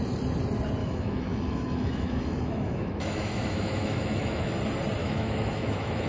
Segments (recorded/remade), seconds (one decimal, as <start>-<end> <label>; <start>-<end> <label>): 0.0-0.8 recorded; 0.8-4.5 remade; 4.5-5.0 recorded; 5.0-6.1 remade